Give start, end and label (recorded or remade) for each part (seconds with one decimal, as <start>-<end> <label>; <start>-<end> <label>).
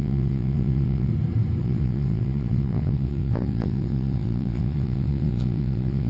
0.0-1.1 remade; 1.1-1.6 recorded; 1.6-6.1 remade